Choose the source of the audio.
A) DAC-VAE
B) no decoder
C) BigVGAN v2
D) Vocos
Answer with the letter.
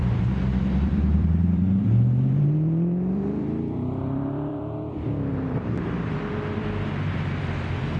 C